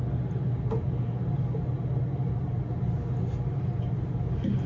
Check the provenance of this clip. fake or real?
real